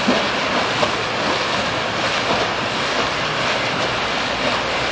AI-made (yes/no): no